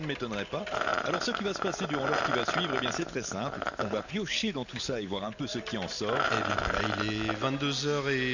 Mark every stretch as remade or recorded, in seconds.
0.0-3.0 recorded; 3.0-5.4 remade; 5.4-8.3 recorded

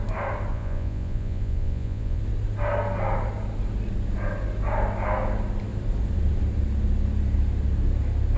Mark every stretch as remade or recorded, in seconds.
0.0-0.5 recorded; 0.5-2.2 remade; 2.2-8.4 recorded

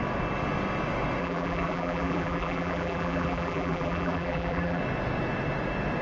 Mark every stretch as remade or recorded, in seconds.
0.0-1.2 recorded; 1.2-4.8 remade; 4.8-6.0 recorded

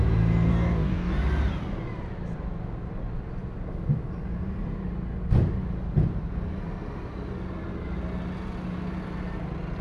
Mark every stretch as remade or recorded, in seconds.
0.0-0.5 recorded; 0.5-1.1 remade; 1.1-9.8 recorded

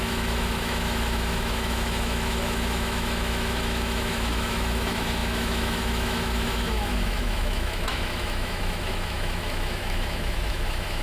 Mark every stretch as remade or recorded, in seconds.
0.0-11.0 remade

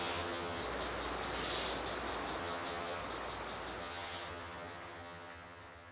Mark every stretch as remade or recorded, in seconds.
0.0-0.6 remade; 0.6-2.4 recorded; 2.4-3.0 remade; 3.0-3.8 recorded; 3.8-5.9 remade